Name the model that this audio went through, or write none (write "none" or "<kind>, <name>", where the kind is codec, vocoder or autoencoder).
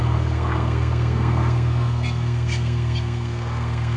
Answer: codec, SNAC